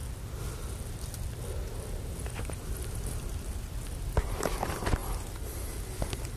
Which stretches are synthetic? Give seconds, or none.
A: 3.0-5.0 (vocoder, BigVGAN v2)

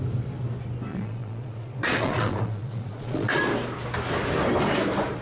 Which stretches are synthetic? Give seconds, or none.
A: 0.9-3.4 (vocoder, Vocos)

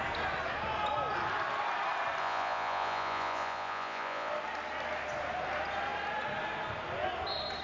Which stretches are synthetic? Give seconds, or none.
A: 2.2-4.3 (vocoder, Vocos)

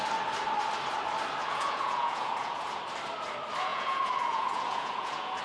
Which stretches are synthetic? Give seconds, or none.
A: 1.4-2.8 (vocoder, Vocos); 3.7-5.4